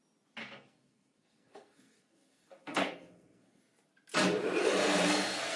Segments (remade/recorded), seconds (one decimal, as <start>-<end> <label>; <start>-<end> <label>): 0.0-0.4 recorded; 0.4-3.6 remade; 3.6-4.8 recorded; 4.8-5.6 remade